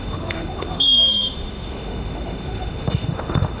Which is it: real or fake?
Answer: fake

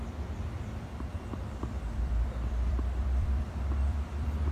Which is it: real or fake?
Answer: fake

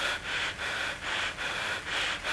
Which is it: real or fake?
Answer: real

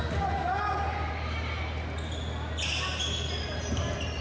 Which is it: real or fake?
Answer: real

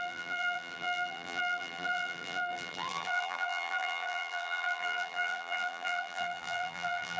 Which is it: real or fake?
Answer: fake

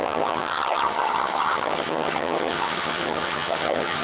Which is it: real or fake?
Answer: fake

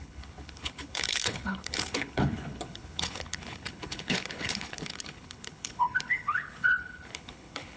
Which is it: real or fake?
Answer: fake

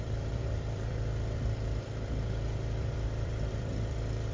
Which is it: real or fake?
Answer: fake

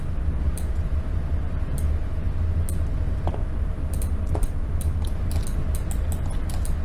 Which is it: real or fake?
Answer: real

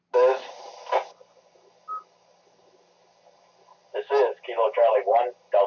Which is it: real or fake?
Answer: real